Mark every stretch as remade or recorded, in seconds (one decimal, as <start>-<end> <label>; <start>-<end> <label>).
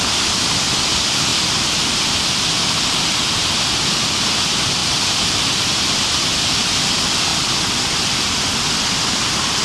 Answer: 0.0-1.3 recorded; 1.3-3.3 remade; 3.3-4.8 recorded; 4.8-5.5 remade; 5.5-9.6 recorded